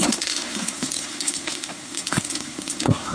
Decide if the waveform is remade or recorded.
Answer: remade